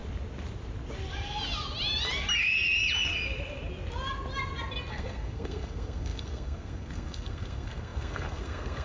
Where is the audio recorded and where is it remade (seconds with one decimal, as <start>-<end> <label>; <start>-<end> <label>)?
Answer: 0.0-4.9 recorded; 4.9-8.8 remade